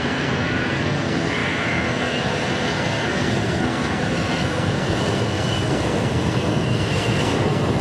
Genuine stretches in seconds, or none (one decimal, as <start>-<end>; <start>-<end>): none